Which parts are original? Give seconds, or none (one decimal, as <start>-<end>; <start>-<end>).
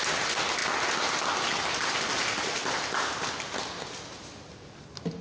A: 0.0-5.2